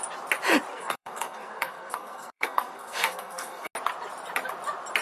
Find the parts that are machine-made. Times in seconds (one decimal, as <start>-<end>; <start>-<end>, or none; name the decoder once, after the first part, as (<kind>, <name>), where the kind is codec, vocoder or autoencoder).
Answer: 0.7-3.7 (codec, SNAC)